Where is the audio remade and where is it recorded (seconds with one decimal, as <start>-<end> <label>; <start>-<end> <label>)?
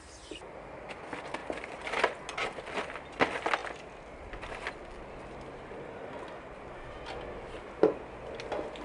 0.0-8.8 recorded